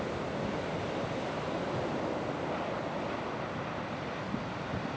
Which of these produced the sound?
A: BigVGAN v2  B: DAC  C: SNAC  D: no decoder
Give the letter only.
D